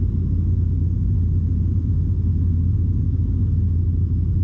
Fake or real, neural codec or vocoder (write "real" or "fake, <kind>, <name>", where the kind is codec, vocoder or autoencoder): real